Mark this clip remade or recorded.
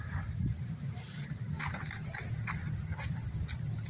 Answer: recorded